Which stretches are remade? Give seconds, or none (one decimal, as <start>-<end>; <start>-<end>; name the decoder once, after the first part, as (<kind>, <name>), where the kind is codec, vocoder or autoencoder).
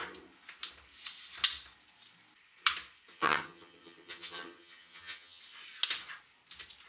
3.1-5.4 (vocoder, HiFi-GAN)